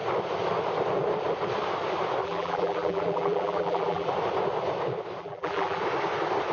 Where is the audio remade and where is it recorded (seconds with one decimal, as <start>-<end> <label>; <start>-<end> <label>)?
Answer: 0.0-2.2 recorded; 2.2-4.1 remade; 4.1-5.2 recorded; 5.2-5.8 remade; 5.8-6.5 recorded